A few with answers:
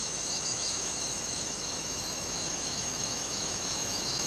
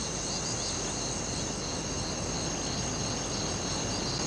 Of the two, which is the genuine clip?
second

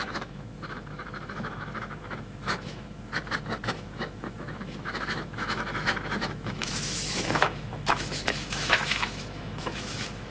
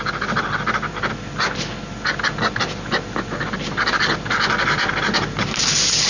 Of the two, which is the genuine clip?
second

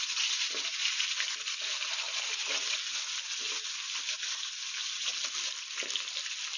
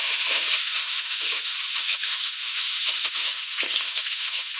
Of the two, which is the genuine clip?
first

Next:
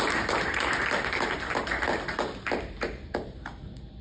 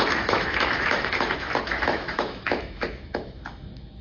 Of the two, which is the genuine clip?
first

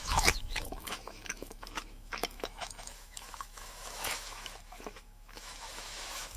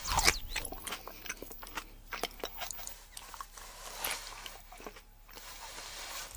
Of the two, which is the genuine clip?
second